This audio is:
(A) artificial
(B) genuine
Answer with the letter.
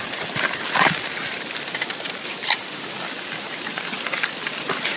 B